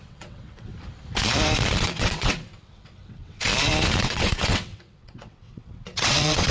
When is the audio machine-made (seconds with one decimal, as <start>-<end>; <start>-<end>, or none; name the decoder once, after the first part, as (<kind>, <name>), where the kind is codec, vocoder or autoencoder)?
0.0-0.7 (vocoder, WaveNeXt); 1.8-3.5; 4.0-6.5